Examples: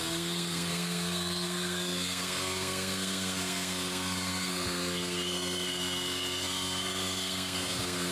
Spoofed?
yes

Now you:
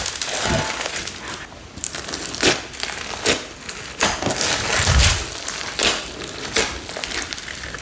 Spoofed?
no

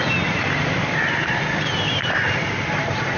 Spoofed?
no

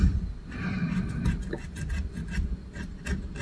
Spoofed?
no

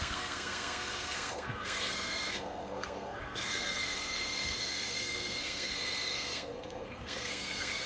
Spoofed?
yes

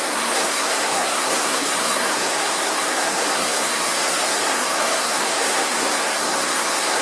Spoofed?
yes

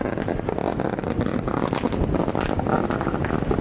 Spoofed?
no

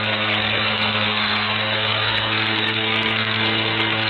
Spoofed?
yes